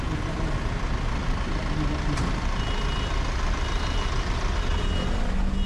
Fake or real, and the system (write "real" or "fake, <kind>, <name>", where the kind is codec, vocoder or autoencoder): real